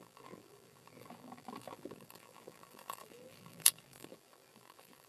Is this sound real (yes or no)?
no